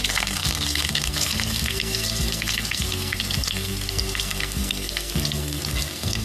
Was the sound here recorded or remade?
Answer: remade